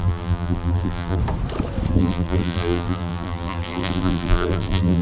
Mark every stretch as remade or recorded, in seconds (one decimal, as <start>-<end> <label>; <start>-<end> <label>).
0.0-1.2 remade; 1.2-1.9 recorded; 1.9-5.0 remade